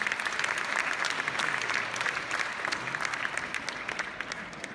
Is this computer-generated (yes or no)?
no